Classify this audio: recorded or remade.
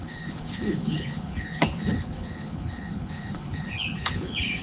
remade